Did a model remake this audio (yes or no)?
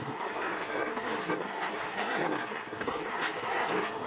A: yes